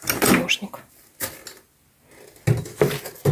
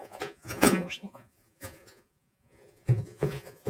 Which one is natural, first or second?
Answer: first